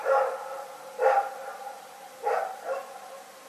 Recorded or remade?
recorded